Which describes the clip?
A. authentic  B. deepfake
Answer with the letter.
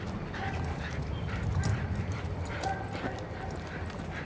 A